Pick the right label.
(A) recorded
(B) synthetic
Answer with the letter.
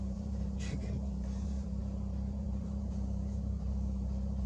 B